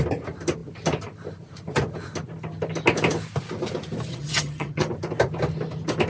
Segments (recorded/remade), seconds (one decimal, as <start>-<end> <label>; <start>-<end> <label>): 0.0-4.1 recorded; 4.1-4.9 remade; 4.9-6.1 recorded